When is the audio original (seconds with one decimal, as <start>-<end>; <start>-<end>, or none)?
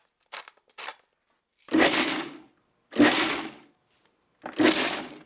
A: 0.0-5.3